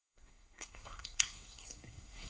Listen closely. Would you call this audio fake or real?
fake